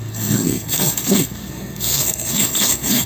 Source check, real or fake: fake